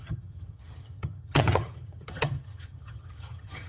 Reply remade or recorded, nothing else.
remade